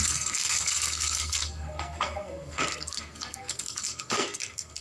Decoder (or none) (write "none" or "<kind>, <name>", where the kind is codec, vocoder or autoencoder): codec, SNAC